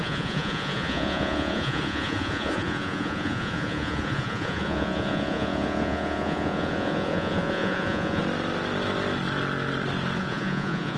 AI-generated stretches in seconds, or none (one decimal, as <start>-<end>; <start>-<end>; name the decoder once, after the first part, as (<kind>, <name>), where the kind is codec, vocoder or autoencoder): 0.0-8.2 (vocoder, Vocos); 10.2-11.0